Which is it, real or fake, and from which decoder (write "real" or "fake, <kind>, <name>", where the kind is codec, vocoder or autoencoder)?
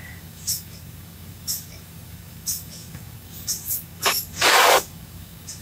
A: fake, codec, DAC